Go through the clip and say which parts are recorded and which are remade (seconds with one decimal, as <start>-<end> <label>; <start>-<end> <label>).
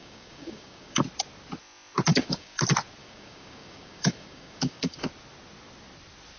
0.0-1.0 remade; 1.0-2.1 recorded; 2.1-2.6 remade; 2.6-3.0 recorded; 3.0-5.1 remade; 5.1-6.4 recorded